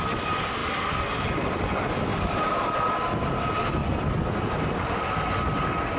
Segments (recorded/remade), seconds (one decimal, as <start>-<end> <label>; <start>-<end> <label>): 0.0-0.6 recorded; 0.6-1.3 remade; 1.3-2.1 recorded; 2.1-2.9 remade; 2.9-3.8 recorded; 3.8-4.8 remade; 4.8-6.0 recorded